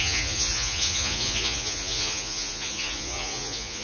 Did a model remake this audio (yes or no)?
yes